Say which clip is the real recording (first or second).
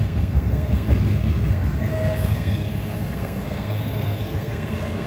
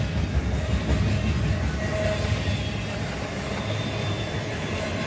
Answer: second